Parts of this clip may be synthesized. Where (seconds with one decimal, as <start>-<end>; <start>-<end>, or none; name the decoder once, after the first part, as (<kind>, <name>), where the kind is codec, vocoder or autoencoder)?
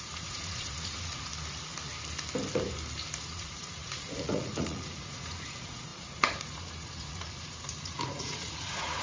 0.0-1.3 (vocoder, Vocos); 3.2-9.0